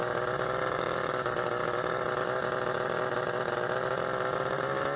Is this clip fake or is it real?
real